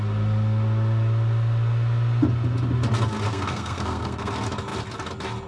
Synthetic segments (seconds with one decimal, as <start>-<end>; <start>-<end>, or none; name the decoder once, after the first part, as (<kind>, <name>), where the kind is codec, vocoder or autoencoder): 3.3-4.3 (codec, SNAC)